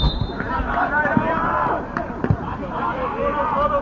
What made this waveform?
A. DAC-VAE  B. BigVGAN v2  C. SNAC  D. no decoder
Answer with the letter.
B